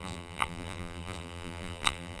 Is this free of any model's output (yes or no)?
no